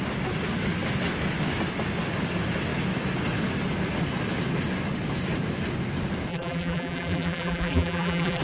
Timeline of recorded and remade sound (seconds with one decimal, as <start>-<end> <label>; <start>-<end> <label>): 0.0-6.3 recorded; 6.3-8.4 remade